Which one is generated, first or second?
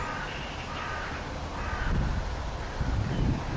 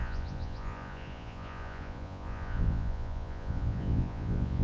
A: second